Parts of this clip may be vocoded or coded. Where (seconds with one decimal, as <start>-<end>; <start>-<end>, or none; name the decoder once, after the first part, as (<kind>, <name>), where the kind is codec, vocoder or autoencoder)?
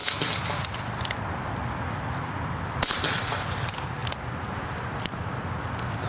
0.0-4.0 (vocoder, BigVGAN v2); 5.0-6.1